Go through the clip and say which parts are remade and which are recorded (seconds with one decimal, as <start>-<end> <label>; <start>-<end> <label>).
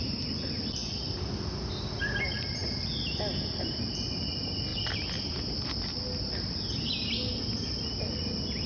0.0-8.7 recorded